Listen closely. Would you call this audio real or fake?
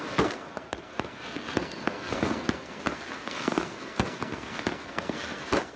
fake